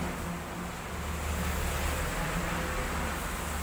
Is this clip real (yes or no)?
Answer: yes